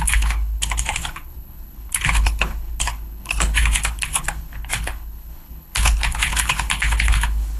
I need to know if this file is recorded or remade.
remade